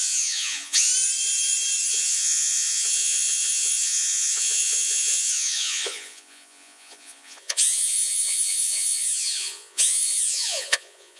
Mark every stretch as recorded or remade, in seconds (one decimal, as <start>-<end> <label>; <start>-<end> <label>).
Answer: 0.0-0.9 remade; 0.9-1.9 recorded; 1.9-11.2 remade